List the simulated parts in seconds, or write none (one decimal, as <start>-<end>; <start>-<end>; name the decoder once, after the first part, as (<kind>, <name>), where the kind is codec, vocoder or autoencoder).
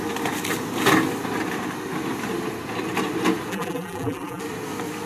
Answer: 3.5-4.4 (vocoder, BigVGAN v2)